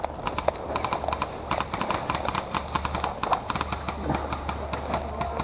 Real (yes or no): yes